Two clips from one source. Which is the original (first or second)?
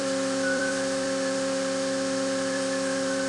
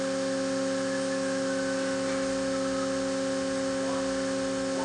second